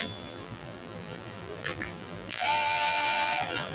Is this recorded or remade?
remade